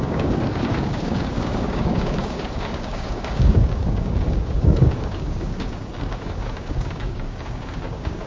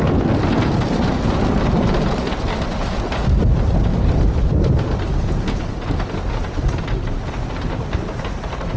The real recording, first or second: second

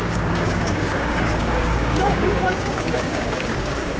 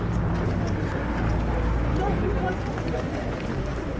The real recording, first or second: second